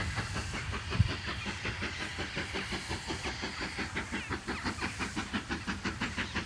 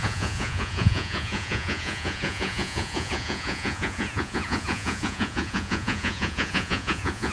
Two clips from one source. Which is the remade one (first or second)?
second